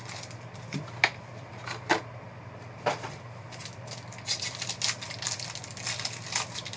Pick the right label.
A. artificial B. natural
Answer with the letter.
B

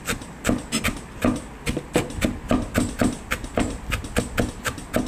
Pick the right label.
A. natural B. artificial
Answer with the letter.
A